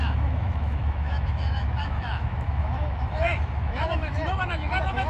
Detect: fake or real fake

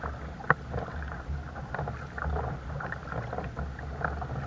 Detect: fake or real real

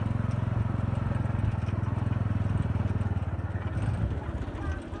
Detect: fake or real real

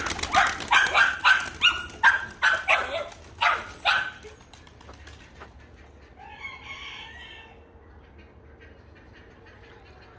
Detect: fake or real real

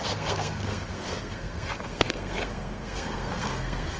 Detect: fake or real fake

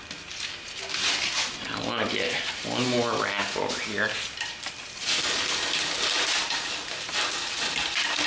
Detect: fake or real real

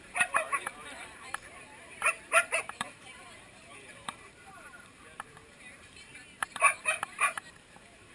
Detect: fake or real fake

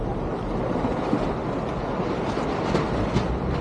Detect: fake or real real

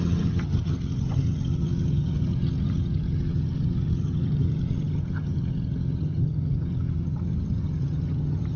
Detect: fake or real fake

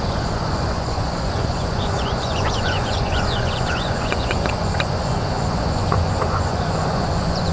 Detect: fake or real fake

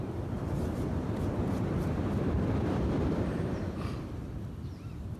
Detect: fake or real fake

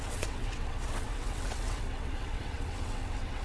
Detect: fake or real fake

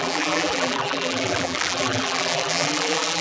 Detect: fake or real fake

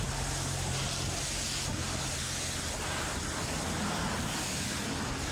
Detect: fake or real real